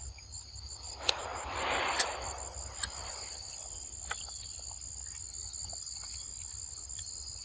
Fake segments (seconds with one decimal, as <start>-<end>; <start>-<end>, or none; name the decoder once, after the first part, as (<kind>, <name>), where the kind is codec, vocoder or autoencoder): none